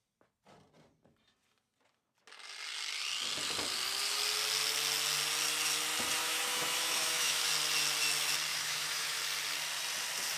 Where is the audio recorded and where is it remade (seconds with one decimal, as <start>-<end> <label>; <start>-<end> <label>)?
0.0-6.2 recorded; 6.2-7.5 remade; 7.5-8.5 recorded; 8.5-9.2 remade; 9.2-10.4 recorded